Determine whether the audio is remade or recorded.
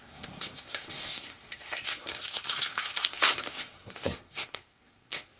remade